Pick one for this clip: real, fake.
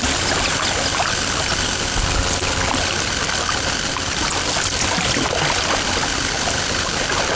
real